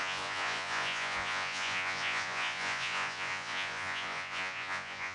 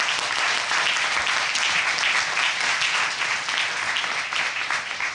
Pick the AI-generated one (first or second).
first